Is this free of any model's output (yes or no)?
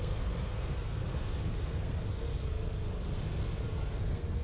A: no